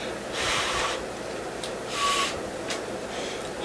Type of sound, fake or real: real